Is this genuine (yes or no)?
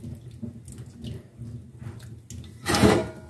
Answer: yes